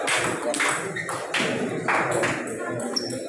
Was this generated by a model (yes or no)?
no